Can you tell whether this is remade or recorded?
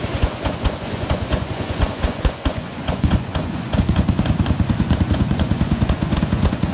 remade